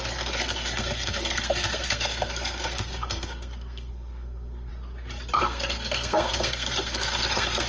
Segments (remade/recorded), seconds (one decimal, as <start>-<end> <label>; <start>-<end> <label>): 0.0-4.7 remade; 4.7-5.4 recorded; 5.4-7.7 remade